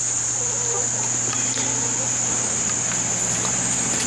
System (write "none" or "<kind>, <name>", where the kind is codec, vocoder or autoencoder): none